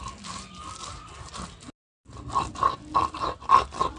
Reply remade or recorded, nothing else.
recorded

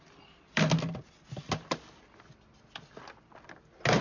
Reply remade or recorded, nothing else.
recorded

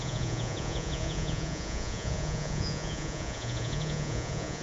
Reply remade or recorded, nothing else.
remade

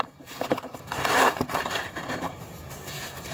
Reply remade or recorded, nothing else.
remade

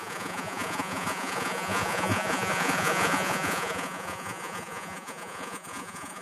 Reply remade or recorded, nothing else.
remade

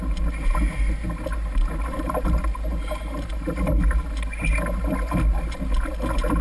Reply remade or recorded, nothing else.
recorded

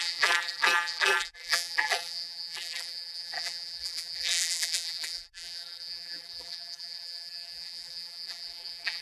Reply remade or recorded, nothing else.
remade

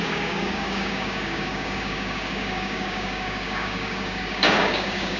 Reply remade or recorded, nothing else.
remade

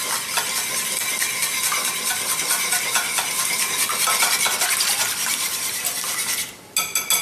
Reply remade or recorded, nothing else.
recorded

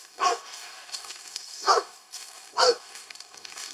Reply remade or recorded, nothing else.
remade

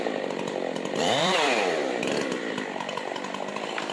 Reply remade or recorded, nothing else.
remade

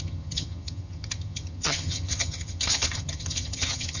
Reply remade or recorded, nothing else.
remade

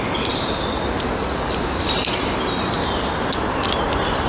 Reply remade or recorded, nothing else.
recorded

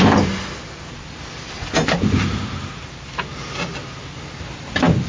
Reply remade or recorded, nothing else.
recorded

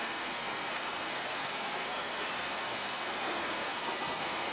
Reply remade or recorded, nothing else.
remade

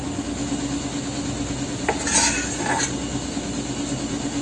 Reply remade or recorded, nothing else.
recorded